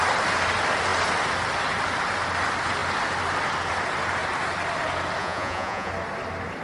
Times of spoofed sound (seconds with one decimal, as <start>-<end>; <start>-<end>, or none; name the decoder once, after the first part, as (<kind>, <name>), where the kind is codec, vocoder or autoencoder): 5.2-5.9 (vocoder, Vocos)